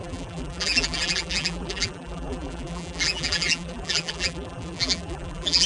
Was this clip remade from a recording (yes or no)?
yes